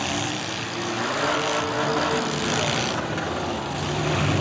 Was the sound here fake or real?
real